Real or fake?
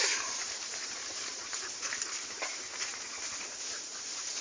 fake